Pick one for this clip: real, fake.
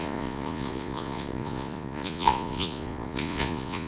fake